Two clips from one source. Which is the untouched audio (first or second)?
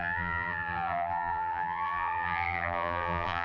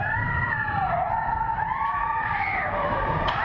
second